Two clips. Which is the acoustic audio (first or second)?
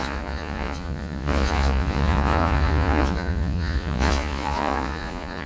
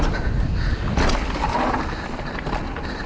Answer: second